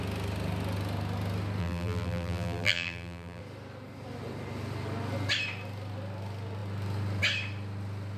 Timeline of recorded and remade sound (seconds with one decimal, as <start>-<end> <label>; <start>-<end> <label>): 0.0-1.6 recorded; 1.6-3.4 remade; 3.4-8.2 recorded